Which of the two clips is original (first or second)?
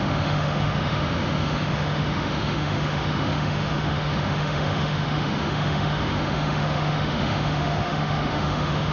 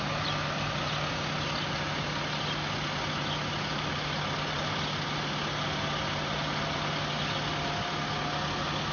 second